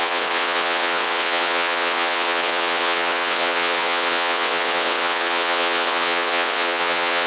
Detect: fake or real fake